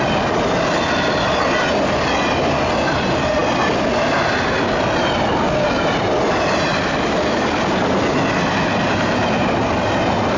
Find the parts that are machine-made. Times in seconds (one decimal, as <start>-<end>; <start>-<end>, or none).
none